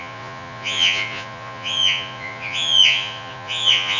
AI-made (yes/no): yes